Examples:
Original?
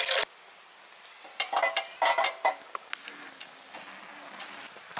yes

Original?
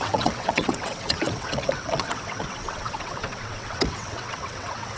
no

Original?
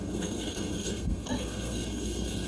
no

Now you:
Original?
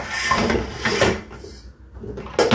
yes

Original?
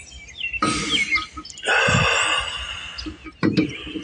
yes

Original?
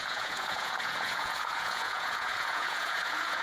no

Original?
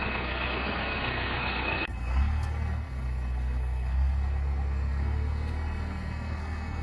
no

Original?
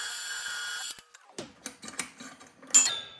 yes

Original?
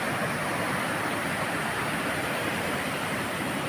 no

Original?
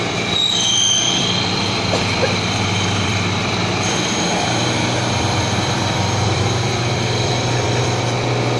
no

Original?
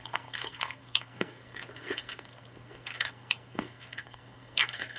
no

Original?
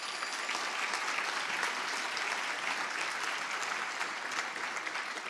yes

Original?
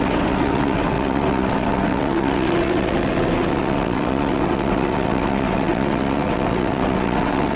no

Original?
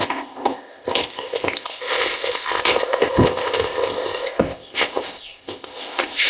no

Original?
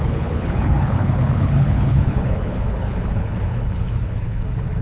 no